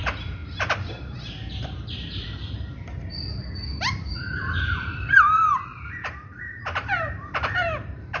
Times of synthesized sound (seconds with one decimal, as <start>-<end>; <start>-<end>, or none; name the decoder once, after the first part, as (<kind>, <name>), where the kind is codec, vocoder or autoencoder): 0.0-8.2 (vocoder, BigVGAN v2)

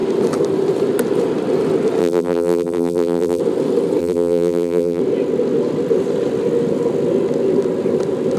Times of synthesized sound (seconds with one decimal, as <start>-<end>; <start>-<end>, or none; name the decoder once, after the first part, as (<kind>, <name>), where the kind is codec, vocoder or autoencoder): 2.0-3.4 (vocoder, BigVGAN v2); 4.0-5.0

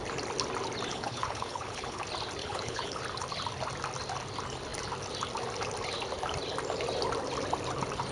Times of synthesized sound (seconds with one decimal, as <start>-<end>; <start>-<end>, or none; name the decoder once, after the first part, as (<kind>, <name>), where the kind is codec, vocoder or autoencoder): 0.9-2.0 (codec, HILCodec); 2.4-3.0

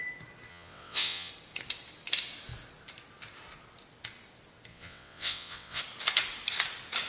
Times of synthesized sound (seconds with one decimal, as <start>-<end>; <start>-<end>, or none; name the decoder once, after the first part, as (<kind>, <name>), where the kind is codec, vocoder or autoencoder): 0.5-1.3 (vocoder, WaveNeXt); 4.7-5.8